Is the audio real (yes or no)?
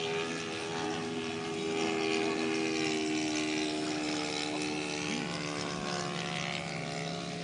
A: yes